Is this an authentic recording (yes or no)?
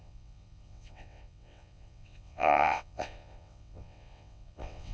no